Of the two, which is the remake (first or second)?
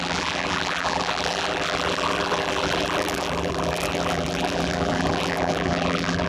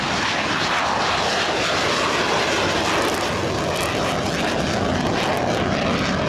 first